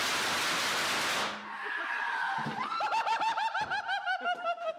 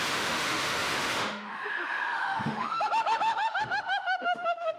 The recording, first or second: first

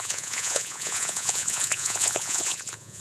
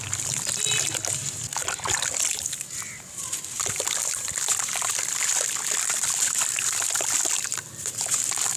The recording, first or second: second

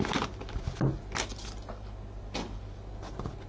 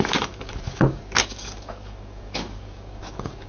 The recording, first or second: first